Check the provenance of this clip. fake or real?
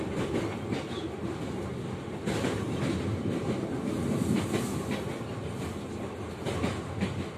real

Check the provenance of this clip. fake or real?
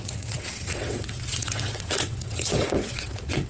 fake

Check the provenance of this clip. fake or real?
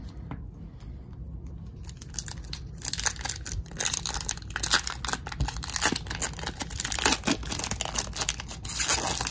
real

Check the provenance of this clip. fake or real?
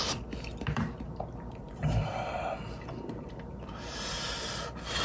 fake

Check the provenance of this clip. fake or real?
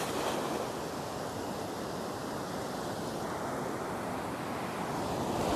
real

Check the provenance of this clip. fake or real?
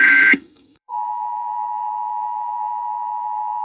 fake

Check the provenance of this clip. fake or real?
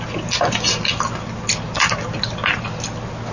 real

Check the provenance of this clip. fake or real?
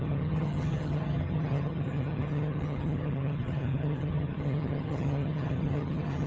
fake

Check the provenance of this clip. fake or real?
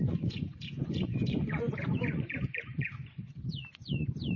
fake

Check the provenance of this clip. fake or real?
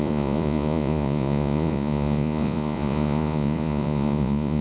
fake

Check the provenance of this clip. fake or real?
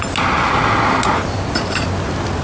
real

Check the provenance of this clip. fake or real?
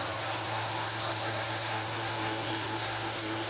fake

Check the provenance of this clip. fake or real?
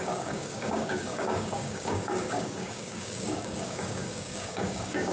fake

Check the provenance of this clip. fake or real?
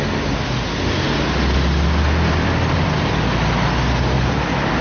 real